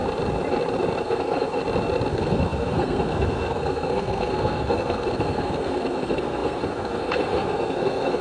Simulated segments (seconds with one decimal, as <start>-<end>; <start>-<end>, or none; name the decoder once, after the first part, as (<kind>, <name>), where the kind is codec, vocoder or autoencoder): 1.0-1.6 (codec, SNAC); 2.1-8.2